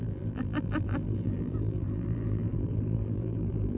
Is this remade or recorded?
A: remade